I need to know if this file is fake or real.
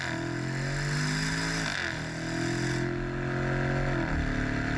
real